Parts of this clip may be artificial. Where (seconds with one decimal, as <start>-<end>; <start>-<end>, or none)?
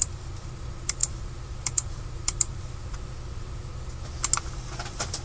0.0-2.8; 4.5-5.2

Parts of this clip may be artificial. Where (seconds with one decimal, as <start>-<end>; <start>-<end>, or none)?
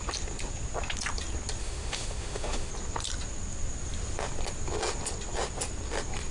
1.6-2.7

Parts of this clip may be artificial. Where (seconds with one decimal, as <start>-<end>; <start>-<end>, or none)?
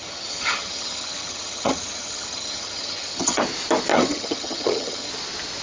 0.0-3.4; 3.9-5.1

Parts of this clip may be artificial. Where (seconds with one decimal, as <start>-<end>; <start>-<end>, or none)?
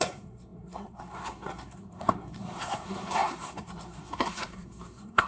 0.0-5.3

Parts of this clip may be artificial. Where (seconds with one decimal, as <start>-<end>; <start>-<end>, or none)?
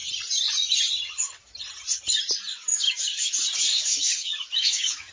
2.7-3.3; 3.7-5.1